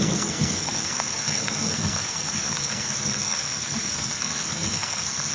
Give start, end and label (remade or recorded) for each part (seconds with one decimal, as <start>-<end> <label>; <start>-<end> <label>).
0.0-5.3 remade